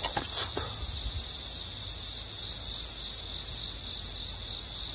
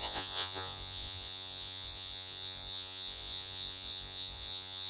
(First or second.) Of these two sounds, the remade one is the second